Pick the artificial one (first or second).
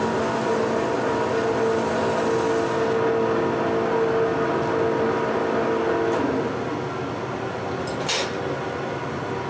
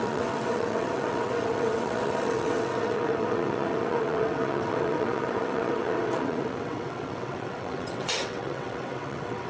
second